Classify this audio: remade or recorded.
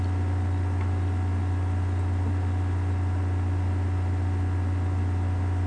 recorded